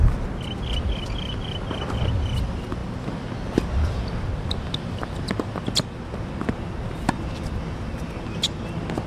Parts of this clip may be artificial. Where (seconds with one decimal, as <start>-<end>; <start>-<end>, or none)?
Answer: none